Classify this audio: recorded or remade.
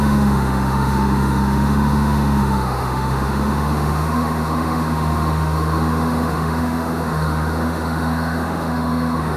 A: remade